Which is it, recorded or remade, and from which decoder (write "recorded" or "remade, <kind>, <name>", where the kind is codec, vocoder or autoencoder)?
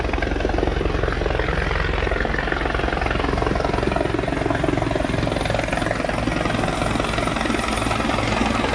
recorded